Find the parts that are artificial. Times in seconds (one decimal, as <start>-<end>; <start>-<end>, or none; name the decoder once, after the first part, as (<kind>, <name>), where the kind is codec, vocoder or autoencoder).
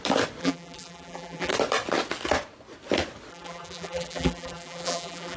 0.4-1.5 (vocoder, BigVGAN v2); 3.3-5.4